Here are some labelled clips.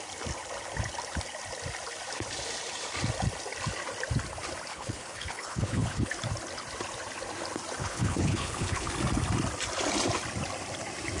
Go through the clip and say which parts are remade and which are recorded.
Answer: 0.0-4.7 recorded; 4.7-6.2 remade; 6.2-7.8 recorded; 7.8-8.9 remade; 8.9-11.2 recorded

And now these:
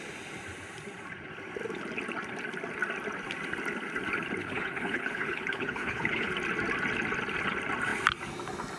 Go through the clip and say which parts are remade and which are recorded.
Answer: 0.0-4.4 recorded; 4.4-6.3 remade; 6.3-8.8 recorded

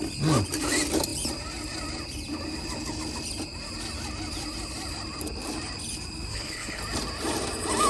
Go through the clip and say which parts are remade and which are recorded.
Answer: 0.0-6.3 recorded; 6.3-6.8 remade; 6.8-7.9 recorded

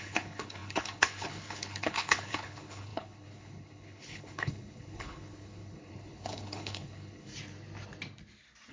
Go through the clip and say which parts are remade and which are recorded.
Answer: 0.0-7.3 remade; 7.3-8.7 recorded

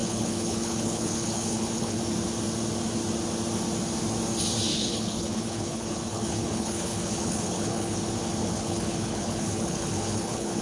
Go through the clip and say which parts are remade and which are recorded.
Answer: 0.0-2.0 remade; 2.0-4.7 recorded; 4.7-8.0 remade; 8.0-8.4 recorded; 8.4-10.6 remade

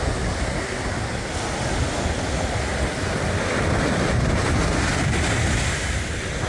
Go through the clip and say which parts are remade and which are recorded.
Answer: 0.0-6.5 recorded

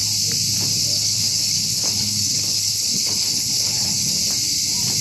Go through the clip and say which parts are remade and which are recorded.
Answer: 0.0-0.8 recorded; 0.8-4.2 remade; 4.2-5.0 recorded

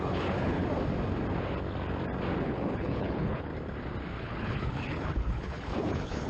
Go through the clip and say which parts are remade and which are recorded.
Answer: 0.0-0.6 remade; 0.6-2.4 recorded; 2.4-3.5 remade; 3.5-4.2 recorded; 4.2-6.3 remade